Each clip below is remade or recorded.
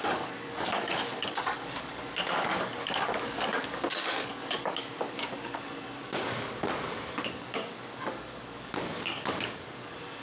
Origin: remade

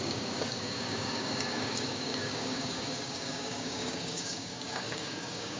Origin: remade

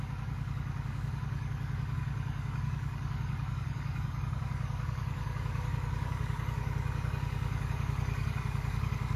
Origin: remade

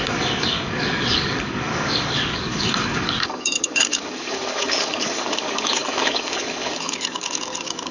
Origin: remade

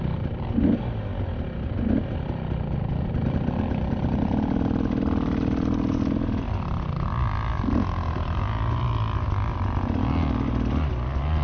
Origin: recorded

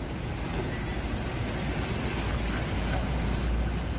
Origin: recorded